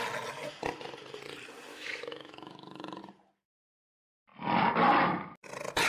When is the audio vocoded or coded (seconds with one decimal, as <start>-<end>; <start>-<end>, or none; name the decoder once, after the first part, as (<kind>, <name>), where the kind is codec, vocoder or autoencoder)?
1.7-3.0 (autoencoder, DAC-VAE)

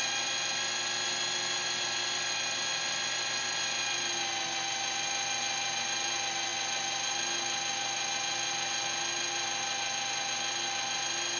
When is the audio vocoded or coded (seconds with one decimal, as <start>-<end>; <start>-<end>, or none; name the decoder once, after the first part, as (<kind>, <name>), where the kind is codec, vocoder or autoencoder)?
1.6-2.3 (vocoder, BigVGAN v2)

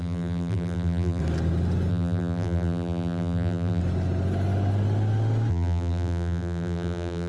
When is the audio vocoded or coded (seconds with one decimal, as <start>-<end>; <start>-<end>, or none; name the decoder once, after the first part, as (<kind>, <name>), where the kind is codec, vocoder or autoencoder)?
0.0-1.2 (vocoder, BigVGAN v2); 1.9-3.8; 5.5-7.3